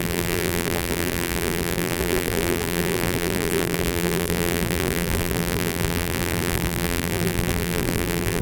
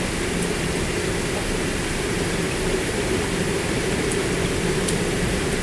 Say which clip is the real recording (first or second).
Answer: second